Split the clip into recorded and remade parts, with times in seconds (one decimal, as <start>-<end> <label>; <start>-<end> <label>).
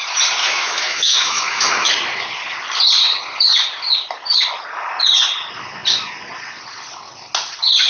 0.0-0.4 recorded; 0.4-1.9 remade; 1.9-7.9 recorded